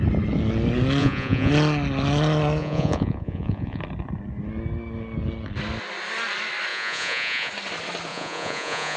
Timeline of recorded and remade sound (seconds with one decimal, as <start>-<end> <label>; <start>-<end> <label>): 0.0-1.0 recorded; 1.0-1.5 remade; 1.5-2.6 recorded; 2.6-3.8 remade; 3.8-6.7 recorded; 6.7-7.5 remade; 7.5-8.1 recorded; 8.1-9.0 remade